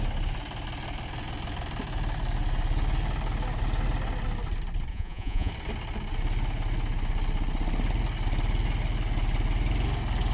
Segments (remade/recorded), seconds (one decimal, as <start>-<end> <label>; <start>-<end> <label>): 0.0-4.9 recorded; 4.9-5.5 remade; 5.5-10.3 recorded